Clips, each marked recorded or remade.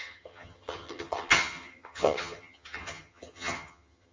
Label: remade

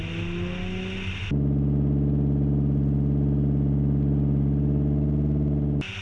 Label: recorded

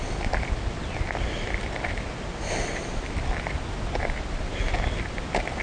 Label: recorded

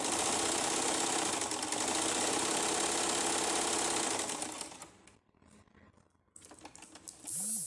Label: recorded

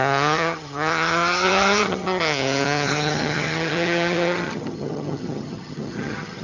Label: remade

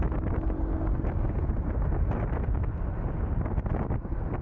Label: recorded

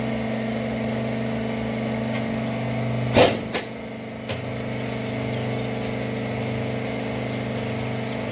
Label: recorded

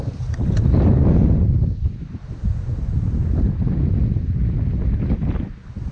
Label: recorded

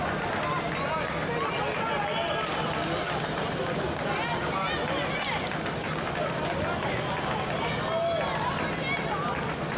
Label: recorded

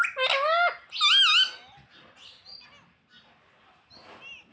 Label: recorded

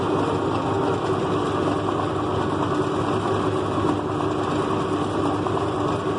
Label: recorded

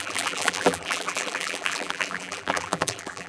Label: remade